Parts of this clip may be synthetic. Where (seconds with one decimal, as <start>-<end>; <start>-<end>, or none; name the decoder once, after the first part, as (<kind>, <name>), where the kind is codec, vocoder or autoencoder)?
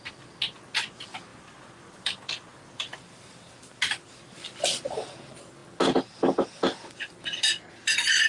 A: 1.3-3.5 (vocoder, BigVGAN v2)